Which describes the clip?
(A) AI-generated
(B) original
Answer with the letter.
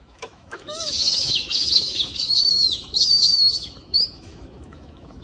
A